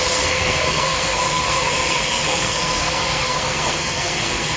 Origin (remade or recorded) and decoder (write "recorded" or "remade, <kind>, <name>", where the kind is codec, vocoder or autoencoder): remade, codec, SNAC